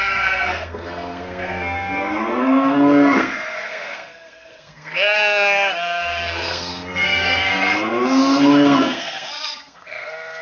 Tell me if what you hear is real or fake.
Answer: fake